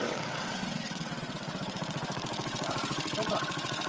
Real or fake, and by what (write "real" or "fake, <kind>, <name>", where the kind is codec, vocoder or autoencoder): fake, vocoder, WaveNeXt